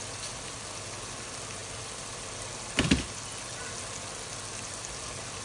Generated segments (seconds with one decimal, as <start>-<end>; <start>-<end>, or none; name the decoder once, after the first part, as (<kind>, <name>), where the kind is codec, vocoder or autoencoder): none